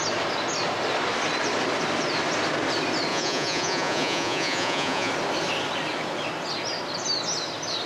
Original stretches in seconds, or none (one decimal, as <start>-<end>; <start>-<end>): 0.0-3.1; 5.1-7.9